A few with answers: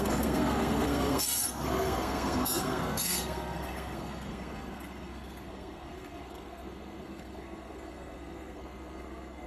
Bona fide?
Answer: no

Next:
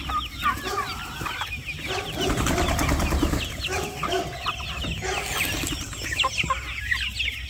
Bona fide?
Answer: yes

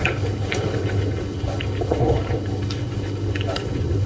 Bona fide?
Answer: no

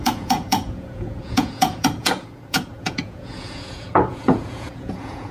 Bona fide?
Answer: no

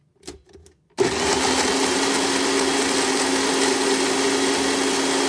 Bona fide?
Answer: yes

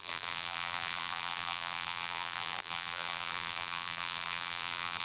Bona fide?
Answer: no